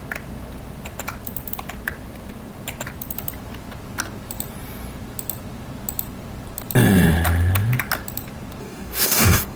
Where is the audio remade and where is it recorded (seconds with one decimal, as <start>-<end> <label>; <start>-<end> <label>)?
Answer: 0.0-8.6 recorded; 8.6-9.6 remade